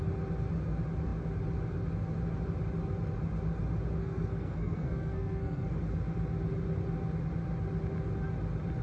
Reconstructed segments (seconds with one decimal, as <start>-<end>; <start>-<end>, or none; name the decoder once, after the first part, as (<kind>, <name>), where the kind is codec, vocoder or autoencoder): 4.0-5.8 (codec, SNAC)